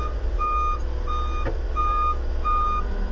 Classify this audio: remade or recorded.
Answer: recorded